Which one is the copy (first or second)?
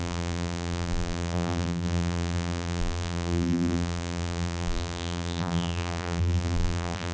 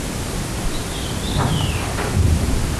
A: first